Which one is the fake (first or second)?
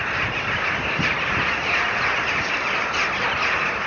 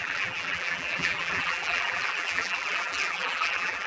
second